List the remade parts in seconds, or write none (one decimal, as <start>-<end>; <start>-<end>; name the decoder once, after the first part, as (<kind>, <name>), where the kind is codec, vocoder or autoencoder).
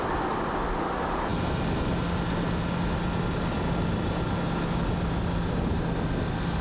none